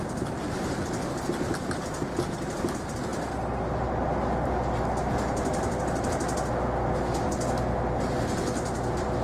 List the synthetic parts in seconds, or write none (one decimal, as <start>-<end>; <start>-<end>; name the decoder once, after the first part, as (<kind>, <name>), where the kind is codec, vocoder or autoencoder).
none